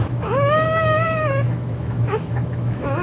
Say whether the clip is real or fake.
fake